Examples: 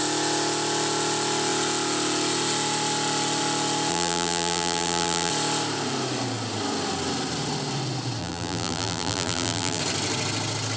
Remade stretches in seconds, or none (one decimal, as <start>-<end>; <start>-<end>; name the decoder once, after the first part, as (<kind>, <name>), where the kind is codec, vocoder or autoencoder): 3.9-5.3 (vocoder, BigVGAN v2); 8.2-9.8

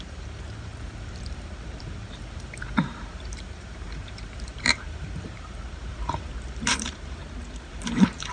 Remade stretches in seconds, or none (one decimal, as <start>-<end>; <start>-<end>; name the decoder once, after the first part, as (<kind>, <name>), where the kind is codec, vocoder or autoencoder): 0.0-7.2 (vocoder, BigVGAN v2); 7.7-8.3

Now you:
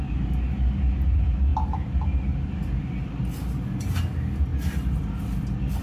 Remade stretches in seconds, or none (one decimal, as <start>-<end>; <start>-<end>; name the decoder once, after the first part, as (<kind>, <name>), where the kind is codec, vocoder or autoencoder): none